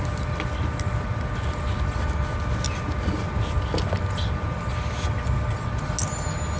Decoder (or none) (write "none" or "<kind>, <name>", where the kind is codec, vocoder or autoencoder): none